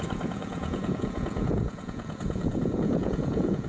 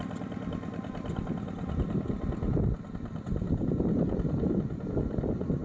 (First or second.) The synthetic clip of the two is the first